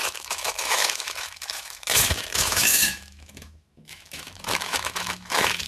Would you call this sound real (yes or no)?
no